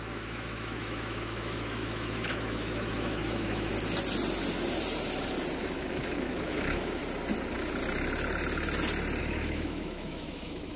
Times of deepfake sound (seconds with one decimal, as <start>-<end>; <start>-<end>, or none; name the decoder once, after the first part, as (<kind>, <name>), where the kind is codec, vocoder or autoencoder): 0.0-3.7 (autoencoder, DAC-VAE); 5.6-7.0; 9.2-10.8